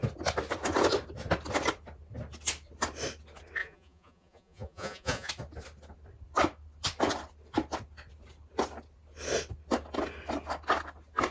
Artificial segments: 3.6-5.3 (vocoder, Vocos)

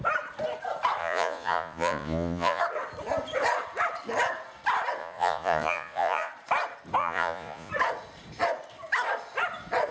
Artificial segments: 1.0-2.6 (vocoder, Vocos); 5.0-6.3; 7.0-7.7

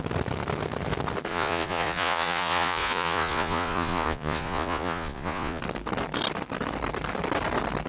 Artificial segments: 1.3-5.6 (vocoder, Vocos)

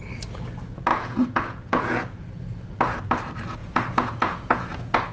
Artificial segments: 0.9-2.4 (vocoder, Vocos); 3.6-5.1

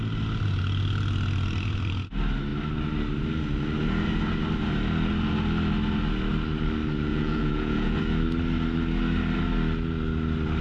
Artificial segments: 7.1-8.0 (vocoder, Vocos)

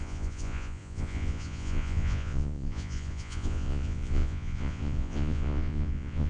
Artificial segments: 0.0-6.3 (vocoder, Vocos)

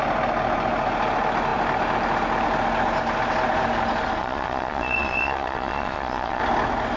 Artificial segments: 4.2-6.4 (vocoder, Vocos)